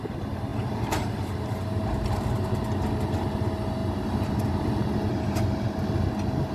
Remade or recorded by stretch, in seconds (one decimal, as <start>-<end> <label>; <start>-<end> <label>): 0.0-0.5 recorded; 0.5-2.6 remade; 2.6-3.8 recorded; 3.8-5.4 remade; 5.4-6.5 recorded